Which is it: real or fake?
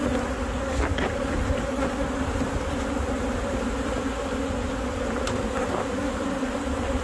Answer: real